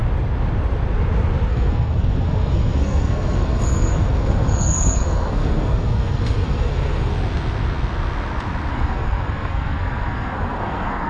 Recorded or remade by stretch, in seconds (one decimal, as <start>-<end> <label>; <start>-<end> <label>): 0.0-1.5 recorded; 1.5-7.1 remade; 7.1-8.7 recorded; 8.7-11.1 remade